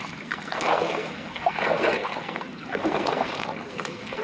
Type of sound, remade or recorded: remade